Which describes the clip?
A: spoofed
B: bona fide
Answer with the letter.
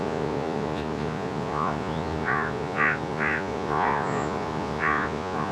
A